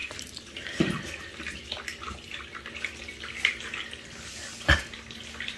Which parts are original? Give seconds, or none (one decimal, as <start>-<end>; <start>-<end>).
0.0-5.6

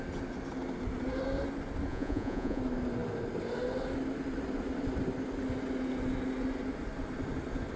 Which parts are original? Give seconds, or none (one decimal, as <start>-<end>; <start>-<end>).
0.0-1.9; 2.6-7.8

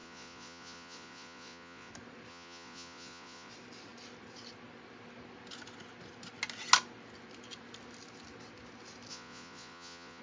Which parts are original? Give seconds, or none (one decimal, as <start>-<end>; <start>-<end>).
1.9-2.3; 3.5-9.1

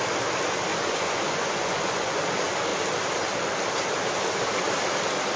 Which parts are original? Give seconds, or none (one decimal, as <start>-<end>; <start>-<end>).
0.0-0.7; 2.2-5.4

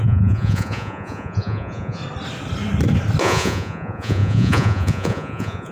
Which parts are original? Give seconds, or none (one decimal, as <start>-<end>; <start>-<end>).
2.0-3.2

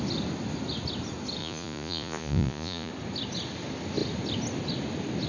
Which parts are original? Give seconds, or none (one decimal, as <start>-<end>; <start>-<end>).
0.0-1.4; 2.9-5.3

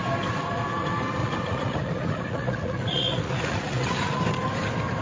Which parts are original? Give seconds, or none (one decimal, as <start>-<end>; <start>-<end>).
0.0-1.2; 4.2-5.0